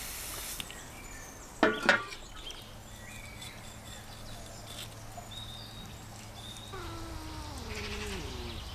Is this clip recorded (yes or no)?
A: yes